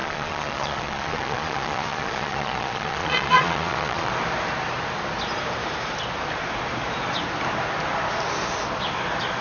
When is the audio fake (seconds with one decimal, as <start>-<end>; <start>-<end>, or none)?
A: 0.0-4.1